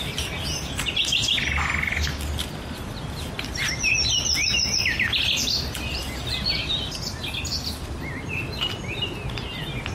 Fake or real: real